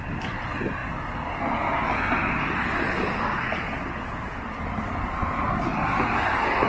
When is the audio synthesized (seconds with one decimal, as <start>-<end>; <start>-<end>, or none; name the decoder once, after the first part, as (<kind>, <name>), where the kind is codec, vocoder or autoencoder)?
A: none